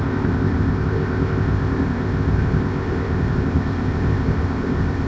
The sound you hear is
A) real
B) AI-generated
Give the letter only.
B